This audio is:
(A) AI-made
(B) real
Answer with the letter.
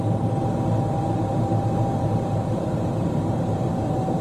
A